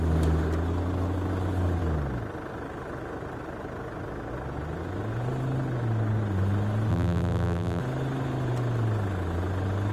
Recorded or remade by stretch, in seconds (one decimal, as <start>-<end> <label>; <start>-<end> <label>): 0.0-6.9 recorded; 6.9-7.8 remade; 7.8-9.9 recorded